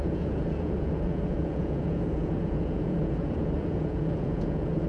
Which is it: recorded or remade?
remade